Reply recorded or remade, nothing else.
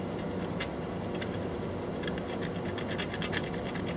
recorded